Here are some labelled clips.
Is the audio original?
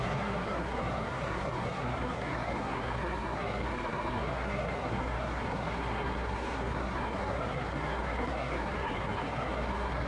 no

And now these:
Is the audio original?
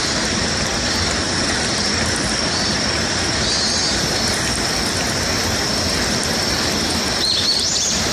yes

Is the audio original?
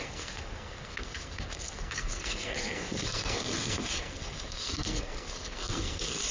no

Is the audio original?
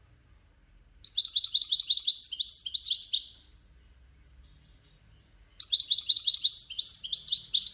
yes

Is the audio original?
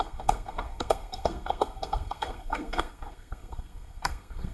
no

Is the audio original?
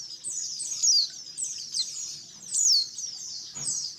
yes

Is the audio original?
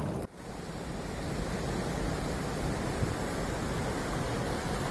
yes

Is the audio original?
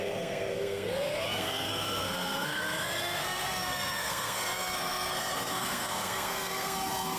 no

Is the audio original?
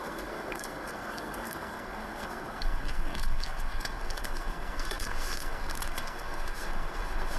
no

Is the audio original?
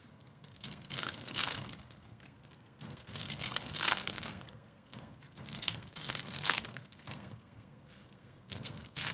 no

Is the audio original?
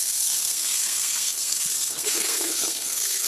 no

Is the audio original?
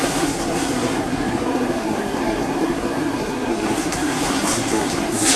no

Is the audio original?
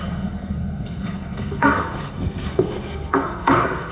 no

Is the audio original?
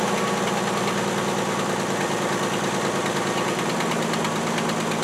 yes